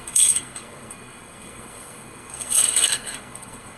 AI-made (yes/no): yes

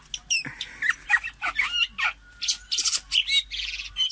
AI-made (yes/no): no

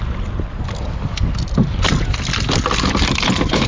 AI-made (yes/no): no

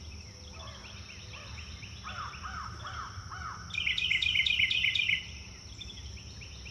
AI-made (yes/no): no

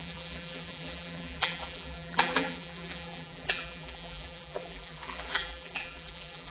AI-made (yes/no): yes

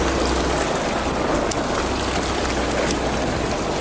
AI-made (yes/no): no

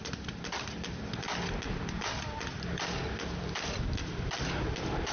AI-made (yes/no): no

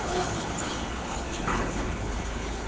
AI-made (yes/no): yes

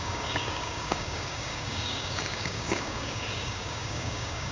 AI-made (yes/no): yes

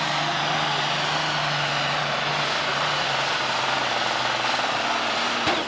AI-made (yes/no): no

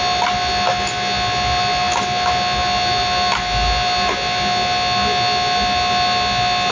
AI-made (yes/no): no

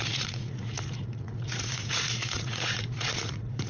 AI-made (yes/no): yes